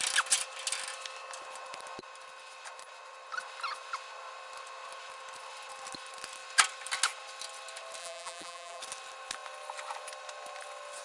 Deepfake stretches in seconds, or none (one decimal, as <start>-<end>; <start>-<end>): 8.0-8.8